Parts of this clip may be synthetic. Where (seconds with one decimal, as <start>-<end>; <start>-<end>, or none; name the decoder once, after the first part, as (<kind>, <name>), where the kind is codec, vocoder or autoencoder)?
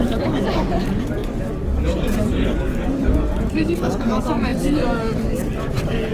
0.0-6.1 (codec, DAC)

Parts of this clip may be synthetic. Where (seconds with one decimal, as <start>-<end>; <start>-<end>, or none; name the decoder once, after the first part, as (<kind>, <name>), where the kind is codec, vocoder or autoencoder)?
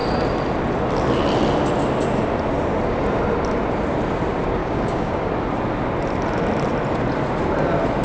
4.6-5.3 (codec, DAC)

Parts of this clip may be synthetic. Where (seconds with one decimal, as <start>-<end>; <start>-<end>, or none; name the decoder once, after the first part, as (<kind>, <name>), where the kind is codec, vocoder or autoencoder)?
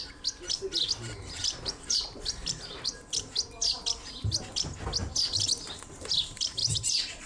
1.0-2.9 (vocoder, BigVGAN v2); 6.6-7.3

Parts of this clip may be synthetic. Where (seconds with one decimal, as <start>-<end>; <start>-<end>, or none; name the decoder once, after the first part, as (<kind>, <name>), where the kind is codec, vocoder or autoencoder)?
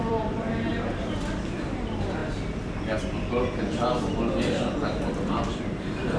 0.0-6.2 (vocoder, BigVGAN v2)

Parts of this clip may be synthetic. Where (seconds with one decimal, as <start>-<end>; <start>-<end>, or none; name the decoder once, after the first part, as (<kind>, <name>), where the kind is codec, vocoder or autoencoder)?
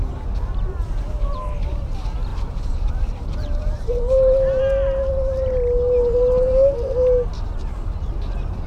2.3-4.6 (vocoder, BigVGAN v2)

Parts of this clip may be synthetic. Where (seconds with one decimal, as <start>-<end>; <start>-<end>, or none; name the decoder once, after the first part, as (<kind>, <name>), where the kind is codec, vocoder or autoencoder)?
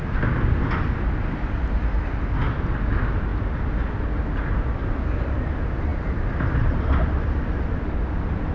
none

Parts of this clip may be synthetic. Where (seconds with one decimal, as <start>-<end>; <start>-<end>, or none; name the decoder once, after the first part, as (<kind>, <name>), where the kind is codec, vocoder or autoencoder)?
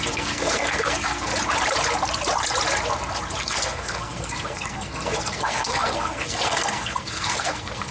0.0-1.3 (codec, SNAC); 3.4-7.9